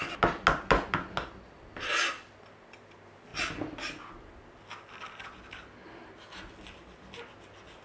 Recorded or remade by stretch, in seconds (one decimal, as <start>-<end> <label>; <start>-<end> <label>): 0.0-7.8 recorded